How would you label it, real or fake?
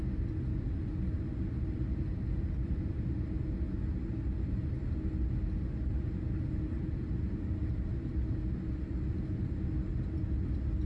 real